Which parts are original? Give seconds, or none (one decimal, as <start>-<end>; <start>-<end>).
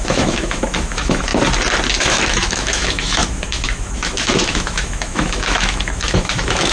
1.3-2.0